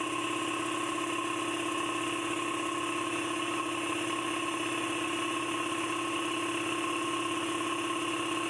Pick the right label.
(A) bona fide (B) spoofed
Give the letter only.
A